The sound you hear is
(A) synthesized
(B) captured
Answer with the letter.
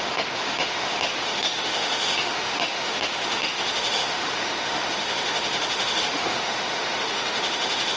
A